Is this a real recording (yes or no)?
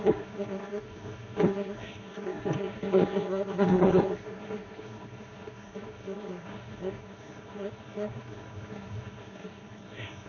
no